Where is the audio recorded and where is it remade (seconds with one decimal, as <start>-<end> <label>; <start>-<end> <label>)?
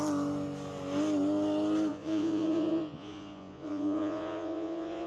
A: 0.0-1.9 recorded; 1.9-5.1 remade